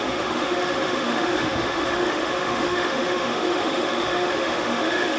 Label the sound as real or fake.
fake